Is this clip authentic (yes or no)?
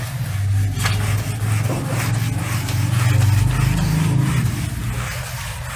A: yes